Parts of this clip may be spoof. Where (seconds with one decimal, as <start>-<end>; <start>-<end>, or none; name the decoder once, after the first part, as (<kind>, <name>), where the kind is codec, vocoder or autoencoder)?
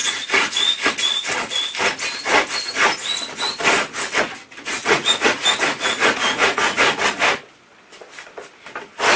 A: 0.0-0.9 (vocoder, Vocos); 4.8-7.0